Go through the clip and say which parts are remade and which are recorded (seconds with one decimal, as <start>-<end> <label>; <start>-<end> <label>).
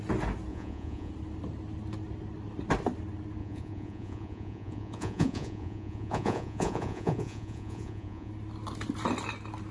0.0-0.5 recorded; 0.5-1.1 remade; 1.1-3.4 recorded; 3.4-8.3 remade; 8.3-9.7 recorded